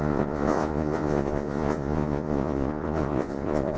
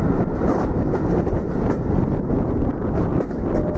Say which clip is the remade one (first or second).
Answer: first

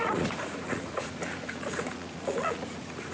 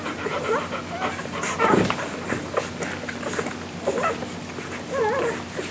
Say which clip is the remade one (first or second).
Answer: first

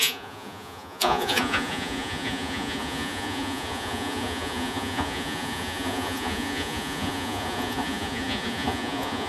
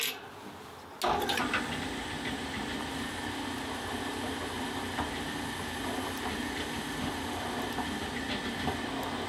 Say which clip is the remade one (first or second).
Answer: first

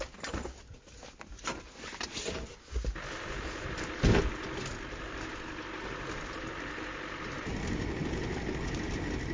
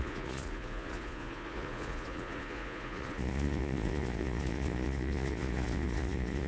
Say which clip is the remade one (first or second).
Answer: second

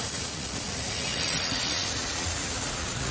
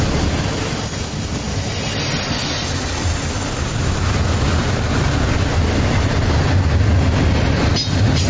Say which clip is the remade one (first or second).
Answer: first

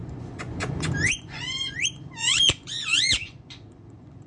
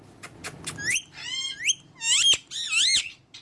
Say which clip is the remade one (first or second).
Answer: first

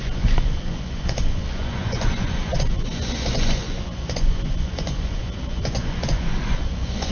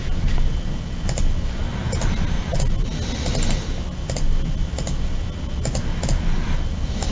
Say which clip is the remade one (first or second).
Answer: first